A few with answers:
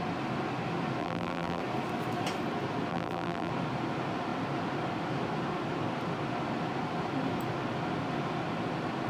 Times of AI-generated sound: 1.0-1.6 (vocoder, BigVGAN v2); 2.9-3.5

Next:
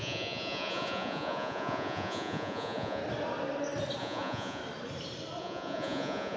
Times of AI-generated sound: 0.0-3.0 (vocoder, Vocos); 4.0-4.6; 5.4-6.4